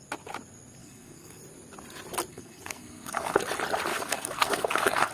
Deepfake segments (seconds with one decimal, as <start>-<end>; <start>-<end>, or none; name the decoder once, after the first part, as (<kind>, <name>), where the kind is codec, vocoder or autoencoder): 0.8-1.4 (codec, SNAC); 2.3-3.4; 3.9-5.1